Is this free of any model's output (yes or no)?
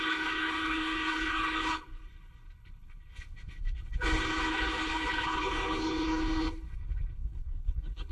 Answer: no